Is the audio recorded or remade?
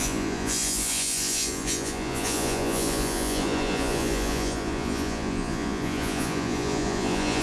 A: remade